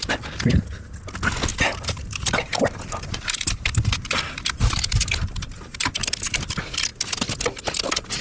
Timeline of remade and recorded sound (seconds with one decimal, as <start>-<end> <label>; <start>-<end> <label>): 0.0-0.6 remade; 0.6-1.5 recorded; 1.5-6.4 remade; 6.4-8.2 recorded